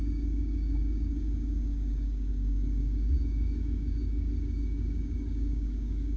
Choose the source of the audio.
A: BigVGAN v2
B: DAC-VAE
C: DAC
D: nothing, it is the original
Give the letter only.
C